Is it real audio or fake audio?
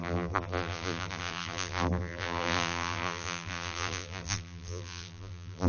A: fake